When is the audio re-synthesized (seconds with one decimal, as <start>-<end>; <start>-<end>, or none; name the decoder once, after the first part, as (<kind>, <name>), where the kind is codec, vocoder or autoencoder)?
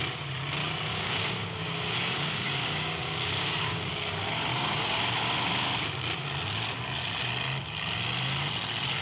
0.6-3.9 (codec, DAC); 4.5-5.0